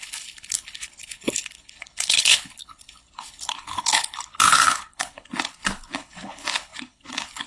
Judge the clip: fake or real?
fake